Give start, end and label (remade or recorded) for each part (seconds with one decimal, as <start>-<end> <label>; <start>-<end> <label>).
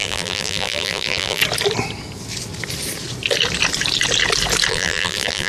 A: 0.0-1.4 remade; 1.4-4.7 recorded; 4.7-5.5 remade